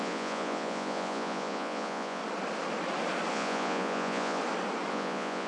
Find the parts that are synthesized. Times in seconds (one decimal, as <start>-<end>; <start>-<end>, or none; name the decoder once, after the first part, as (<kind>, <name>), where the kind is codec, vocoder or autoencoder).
0.0-2.2 (vocoder, Vocos); 3.3-4.4; 4.9-5.5